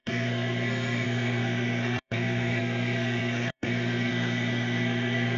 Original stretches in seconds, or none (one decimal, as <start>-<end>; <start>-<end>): none